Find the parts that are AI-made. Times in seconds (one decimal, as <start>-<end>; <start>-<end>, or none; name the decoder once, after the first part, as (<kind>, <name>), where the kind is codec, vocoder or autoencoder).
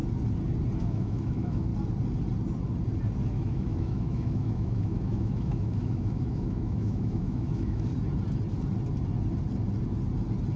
0.8-1.7 (autoencoder, DAC-VAE); 3.3-7.9